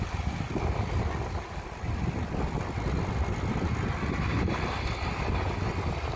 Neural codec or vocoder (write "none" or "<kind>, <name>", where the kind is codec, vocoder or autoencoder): none